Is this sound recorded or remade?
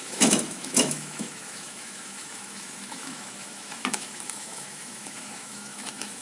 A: remade